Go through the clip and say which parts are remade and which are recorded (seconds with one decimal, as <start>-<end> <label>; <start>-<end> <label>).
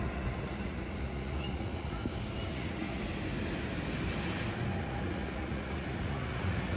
0.0-2.0 remade; 2.0-2.5 recorded; 2.5-3.0 remade; 3.0-4.8 recorded; 4.8-6.8 remade